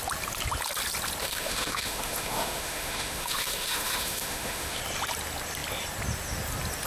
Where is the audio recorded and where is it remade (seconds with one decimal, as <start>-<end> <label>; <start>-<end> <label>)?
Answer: 0.0-1.2 recorded; 1.2-4.8 remade; 4.8-6.9 recorded